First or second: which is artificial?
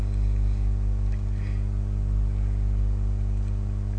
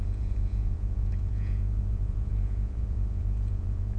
second